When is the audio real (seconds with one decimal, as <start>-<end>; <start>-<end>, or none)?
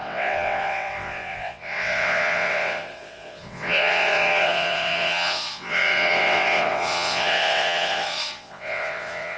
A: none